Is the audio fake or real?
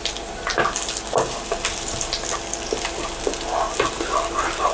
real